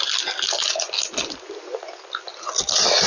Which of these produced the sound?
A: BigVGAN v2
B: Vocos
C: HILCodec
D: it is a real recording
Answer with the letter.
D